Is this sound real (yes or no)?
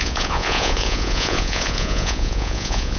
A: no